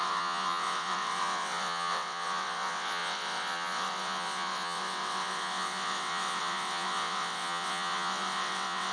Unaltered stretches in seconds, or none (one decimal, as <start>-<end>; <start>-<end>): none